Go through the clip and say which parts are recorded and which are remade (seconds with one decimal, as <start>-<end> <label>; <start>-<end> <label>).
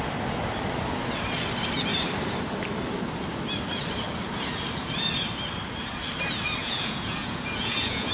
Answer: 0.0-6.6 recorded; 6.6-8.1 remade